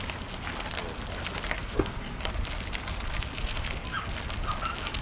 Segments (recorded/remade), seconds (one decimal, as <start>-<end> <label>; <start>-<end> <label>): 0.0-1.6 recorded; 1.6-2.2 remade; 2.2-5.0 recorded